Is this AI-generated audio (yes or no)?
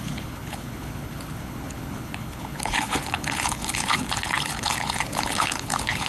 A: yes